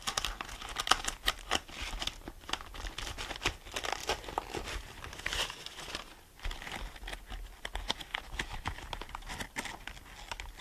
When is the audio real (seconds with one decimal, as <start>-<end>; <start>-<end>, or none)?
0.0-8.1; 9.3-10.6